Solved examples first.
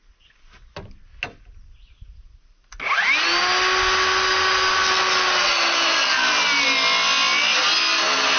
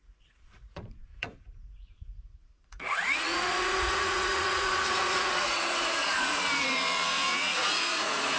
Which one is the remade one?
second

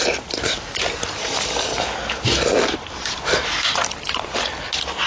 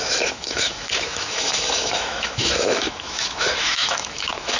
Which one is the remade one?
second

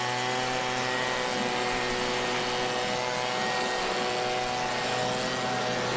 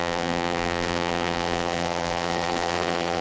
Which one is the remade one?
second